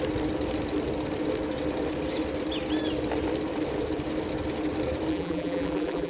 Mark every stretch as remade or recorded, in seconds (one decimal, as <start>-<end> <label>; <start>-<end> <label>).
0.0-5.1 recorded; 5.1-6.1 remade